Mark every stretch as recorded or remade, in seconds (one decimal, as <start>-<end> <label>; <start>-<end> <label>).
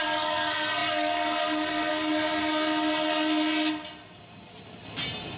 0.0-1.9 remade; 1.9-5.4 recorded